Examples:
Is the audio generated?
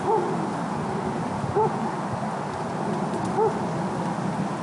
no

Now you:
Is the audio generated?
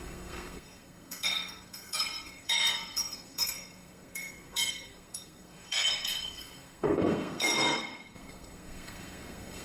yes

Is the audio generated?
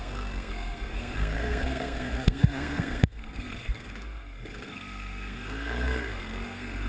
yes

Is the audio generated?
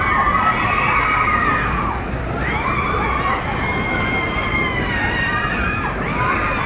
no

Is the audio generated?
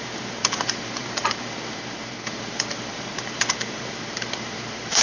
yes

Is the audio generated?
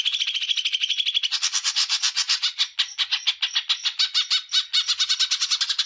no